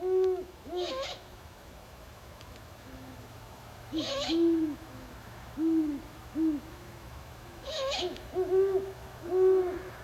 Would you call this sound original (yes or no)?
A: no